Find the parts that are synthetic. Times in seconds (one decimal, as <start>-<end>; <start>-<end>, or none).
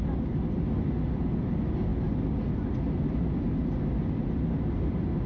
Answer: none